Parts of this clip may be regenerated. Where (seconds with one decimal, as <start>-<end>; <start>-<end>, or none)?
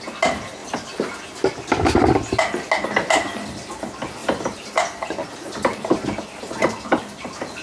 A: 4.2-4.8